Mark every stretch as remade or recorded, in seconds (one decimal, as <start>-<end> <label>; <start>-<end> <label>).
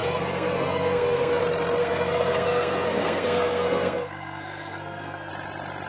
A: 0.0-1.4 remade; 1.4-1.8 recorded; 1.8-5.3 remade; 5.3-5.9 recorded